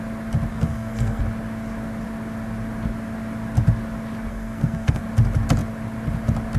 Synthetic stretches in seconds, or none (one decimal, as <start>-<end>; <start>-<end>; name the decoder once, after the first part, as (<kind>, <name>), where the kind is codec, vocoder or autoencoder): 0.5-1.2 (codec, SNAC); 4.3-5.0